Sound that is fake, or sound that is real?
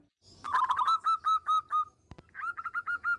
real